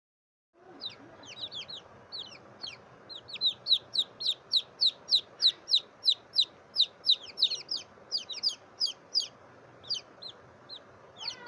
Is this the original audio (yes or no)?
yes